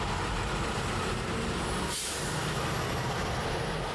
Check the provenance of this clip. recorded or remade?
recorded